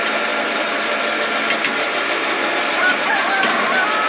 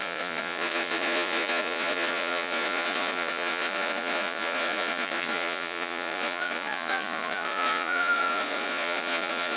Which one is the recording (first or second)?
first